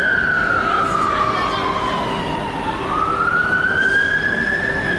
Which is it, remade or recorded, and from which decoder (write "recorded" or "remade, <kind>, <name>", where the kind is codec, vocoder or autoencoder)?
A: recorded